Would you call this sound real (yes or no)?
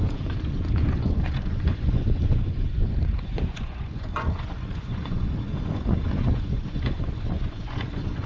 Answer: no